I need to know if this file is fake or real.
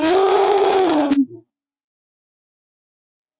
fake